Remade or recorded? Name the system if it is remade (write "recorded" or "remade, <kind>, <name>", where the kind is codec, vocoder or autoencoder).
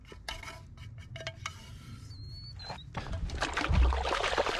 recorded